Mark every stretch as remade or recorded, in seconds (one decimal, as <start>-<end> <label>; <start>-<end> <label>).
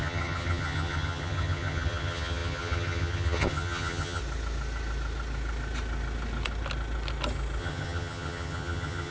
0.0-4.2 remade; 4.2-7.6 recorded; 7.6-9.1 remade